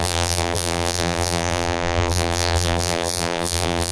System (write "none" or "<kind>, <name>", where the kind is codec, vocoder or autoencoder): vocoder, BigVGAN v2